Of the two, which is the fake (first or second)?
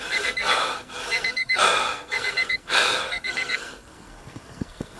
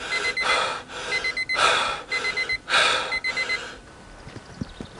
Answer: first